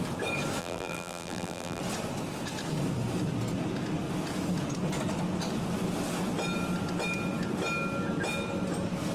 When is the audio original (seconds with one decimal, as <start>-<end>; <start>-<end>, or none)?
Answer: 0.0-0.6; 1.8-9.1